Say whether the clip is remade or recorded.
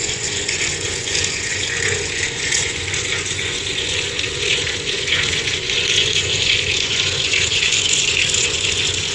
remade